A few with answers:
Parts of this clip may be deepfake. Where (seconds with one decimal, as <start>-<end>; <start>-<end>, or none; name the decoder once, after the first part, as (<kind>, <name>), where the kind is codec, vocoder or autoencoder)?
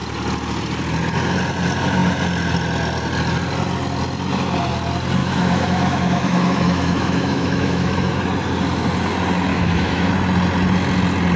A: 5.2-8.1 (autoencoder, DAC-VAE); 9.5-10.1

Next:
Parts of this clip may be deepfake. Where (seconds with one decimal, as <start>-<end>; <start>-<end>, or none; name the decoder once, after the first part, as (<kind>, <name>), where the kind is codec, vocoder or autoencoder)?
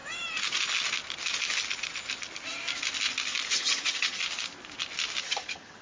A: 3.5-4.2 (vocoder, HiFi-GAN); 5.2-5.8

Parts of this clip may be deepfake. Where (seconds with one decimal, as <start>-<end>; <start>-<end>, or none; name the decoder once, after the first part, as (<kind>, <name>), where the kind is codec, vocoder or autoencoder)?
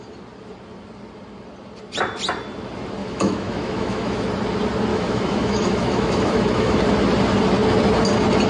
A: 3.0-4.3 (autoencoder, DAC-VAE); 4.9-6.8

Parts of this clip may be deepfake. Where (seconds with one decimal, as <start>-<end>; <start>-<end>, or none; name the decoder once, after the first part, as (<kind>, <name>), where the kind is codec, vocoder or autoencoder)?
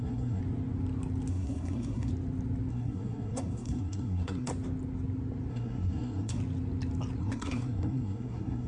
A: 0.0-0.4 (codec, SNAC); 1.3-2.1; 2.7-4.5; 5.5-6.4; 7.2-8.7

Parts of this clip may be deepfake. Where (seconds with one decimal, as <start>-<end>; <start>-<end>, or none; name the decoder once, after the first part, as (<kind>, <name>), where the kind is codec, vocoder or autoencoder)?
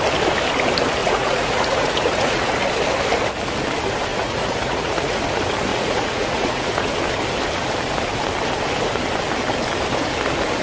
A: 1.0-2.5 (vocoder, Vocos); 4.1-5.2; 5.7-6.9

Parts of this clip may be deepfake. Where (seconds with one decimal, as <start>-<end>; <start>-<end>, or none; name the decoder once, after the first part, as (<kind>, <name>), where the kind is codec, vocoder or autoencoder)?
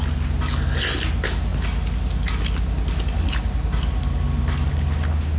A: none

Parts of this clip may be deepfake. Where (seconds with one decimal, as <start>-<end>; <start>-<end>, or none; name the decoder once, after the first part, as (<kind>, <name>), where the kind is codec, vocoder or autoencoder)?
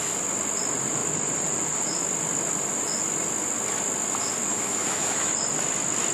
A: 4.5-5.3 (autoencoder, DAC-VAE)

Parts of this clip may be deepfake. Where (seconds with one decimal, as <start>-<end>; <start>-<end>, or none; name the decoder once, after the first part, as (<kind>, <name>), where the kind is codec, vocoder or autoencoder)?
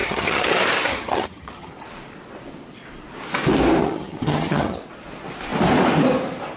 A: 0.0-0.5 (vocoder, HiFi-GAN); 0.9-1.7; 3.8-4.8